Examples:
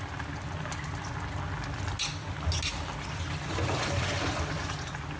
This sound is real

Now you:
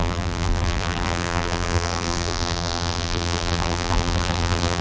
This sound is fake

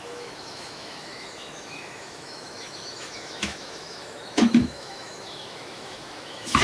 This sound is fake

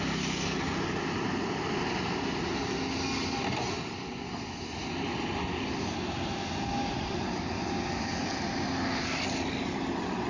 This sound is real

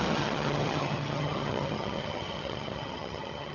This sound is fake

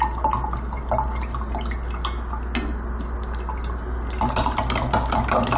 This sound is real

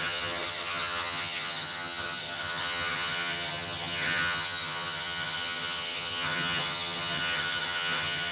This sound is fake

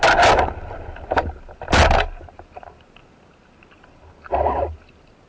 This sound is real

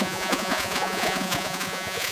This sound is fake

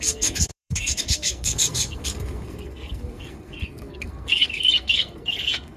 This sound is fake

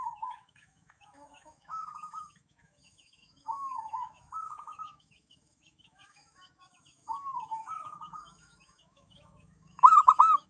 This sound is fake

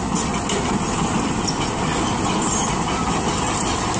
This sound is real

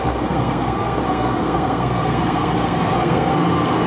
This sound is fake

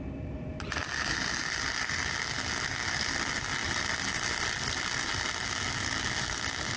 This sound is real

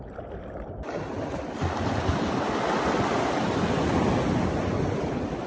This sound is real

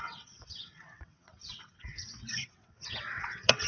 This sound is fake